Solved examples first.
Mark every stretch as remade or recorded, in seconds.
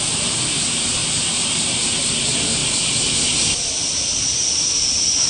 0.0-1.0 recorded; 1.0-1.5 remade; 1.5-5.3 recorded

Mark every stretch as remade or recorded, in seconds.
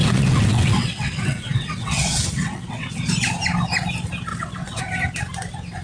0.0-3.0 remade; 3.0-4.3 recorded; 4.3-4.8 remade; 4.8-5.8 recorded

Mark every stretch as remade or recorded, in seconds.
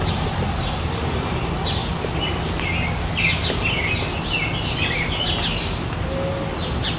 0.0-1.8 remade; 1.8-6.0 recorded; 6.0-7.0 remade